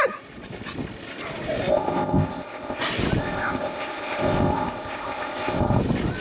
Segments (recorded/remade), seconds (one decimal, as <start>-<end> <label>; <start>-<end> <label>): 0.0-1.7 recorded; 1.7-2.8 remade; 2.8-3.2 recorded; 3.2-5.8 remade; 5.8-6.2 recorded